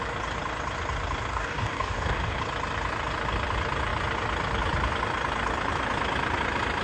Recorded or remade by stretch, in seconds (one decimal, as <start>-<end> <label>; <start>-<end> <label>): 0.0-1.3 recorded; 1.3-2.4 remade; 2.4-6.8 recorded

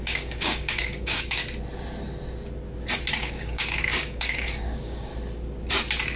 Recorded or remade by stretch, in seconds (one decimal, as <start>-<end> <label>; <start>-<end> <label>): 0.0-1.4 remade; 1.4-3.1 recorded; 3.1-5.1 remade; 5.1-6.2 recorded